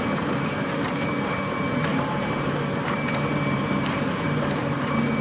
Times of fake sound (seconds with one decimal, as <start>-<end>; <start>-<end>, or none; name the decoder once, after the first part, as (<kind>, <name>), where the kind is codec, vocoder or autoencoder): 0.0-5.2 (vocoder, BigVGAN v2)

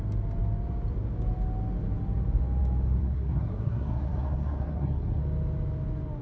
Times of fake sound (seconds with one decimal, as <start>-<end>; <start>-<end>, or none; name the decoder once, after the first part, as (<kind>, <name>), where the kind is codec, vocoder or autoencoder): 3.0-5.2 (codec, SNAC)